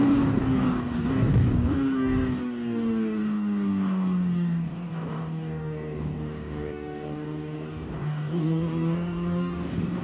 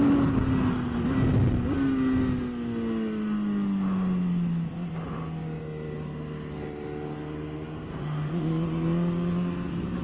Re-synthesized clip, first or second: first